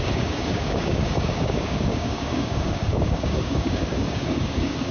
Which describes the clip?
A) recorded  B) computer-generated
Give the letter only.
B